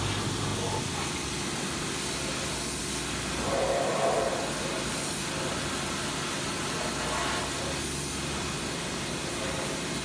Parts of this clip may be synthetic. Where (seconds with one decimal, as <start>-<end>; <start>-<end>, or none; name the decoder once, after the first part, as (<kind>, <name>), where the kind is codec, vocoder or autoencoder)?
none